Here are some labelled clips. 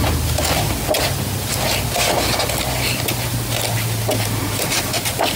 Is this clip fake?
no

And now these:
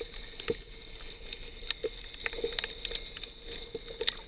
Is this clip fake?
no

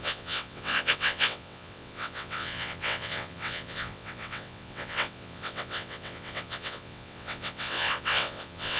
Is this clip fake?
yes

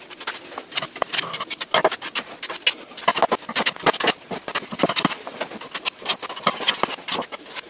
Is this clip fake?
no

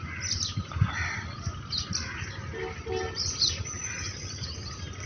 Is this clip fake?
no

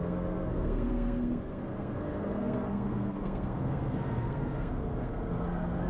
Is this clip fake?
yes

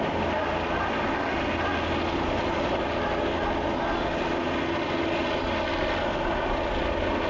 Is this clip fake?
no